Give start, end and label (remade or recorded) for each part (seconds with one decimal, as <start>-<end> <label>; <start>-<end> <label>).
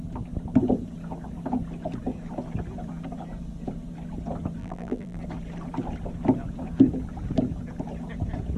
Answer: 0.0-4.6 recorded; 4.6-5.2 remade; 5.2-8.6 recorded